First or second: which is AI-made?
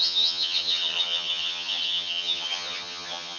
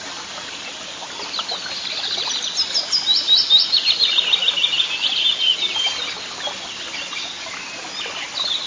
first